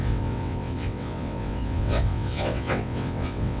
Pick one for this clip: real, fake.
fake